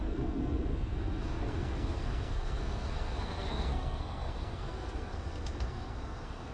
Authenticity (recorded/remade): remade